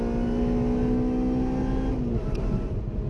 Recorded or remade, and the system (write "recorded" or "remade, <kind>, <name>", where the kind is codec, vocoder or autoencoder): recorded